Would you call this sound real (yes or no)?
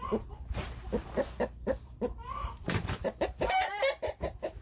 no